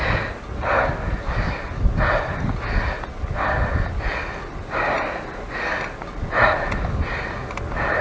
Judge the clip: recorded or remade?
recorded